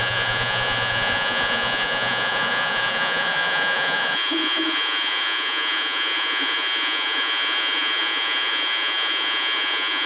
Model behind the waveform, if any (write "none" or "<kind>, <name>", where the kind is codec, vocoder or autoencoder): vocoder, Vocos